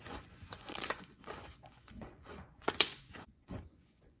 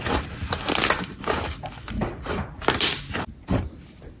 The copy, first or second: first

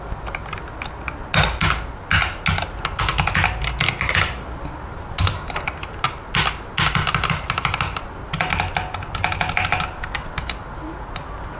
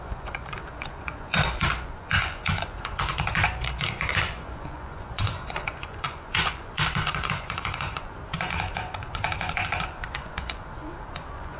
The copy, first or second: second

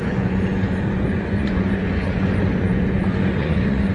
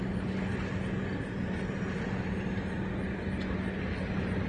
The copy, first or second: first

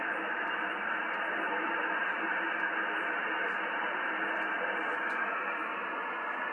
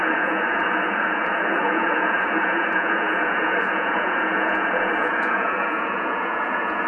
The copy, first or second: second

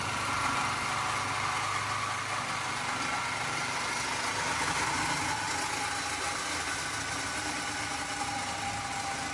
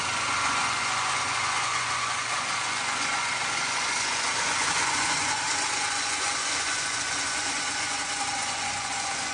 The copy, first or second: second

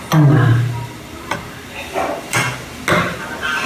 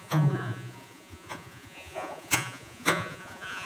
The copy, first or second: second